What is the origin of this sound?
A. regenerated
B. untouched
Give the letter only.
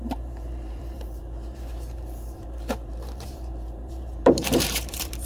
A